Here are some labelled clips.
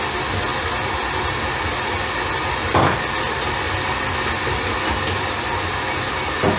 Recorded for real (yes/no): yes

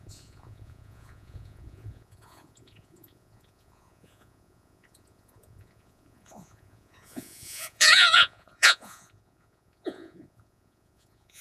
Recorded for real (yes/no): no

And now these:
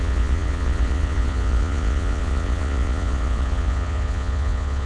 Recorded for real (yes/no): no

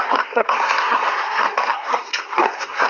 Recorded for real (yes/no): no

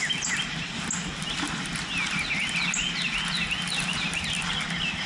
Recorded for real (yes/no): yes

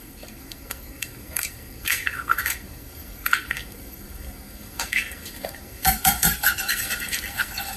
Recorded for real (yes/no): no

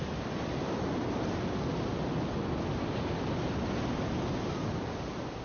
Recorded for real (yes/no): yes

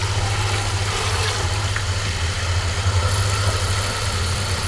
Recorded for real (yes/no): yes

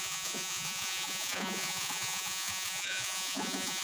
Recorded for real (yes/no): no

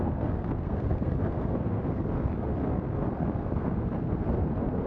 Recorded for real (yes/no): no